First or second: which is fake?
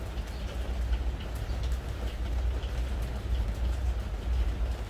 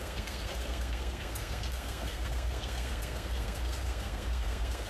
second